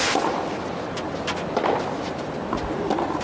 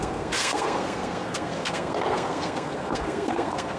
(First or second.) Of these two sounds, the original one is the first